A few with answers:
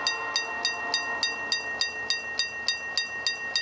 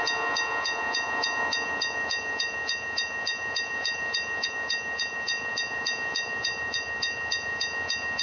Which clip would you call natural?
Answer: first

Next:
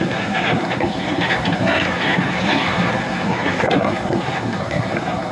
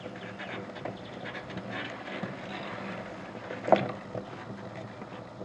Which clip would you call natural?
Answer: second